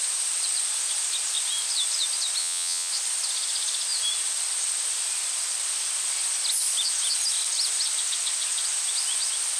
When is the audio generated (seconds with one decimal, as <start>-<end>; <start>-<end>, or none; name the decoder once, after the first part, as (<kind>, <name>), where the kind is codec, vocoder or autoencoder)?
2.4-2.9 (vocoder, WaveNeXt)